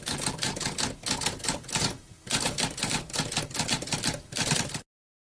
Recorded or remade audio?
recorded